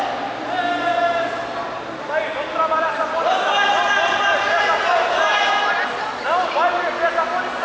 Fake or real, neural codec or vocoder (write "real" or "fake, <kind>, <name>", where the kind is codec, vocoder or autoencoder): real